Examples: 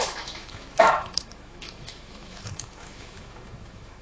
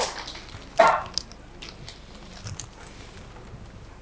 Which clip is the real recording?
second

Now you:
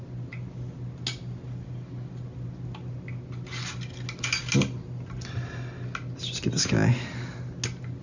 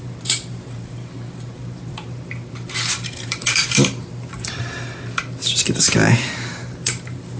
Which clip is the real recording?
first